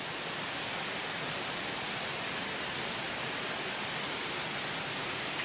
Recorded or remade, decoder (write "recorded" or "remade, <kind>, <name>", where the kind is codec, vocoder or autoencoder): remade, vocoder, BigVGAN v2